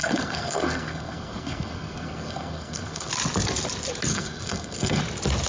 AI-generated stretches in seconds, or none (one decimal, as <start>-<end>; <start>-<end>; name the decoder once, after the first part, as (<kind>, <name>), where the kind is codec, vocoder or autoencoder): 0.0-3.1 (codec, SNAC); 4.1-5.0